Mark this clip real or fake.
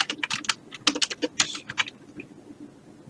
real